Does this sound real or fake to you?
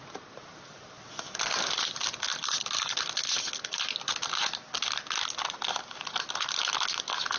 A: real